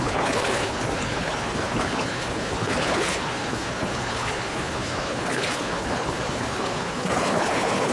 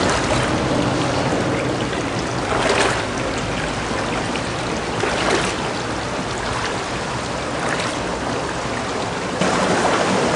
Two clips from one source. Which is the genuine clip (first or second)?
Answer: second